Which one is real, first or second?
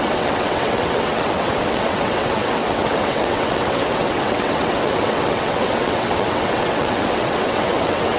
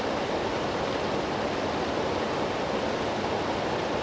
second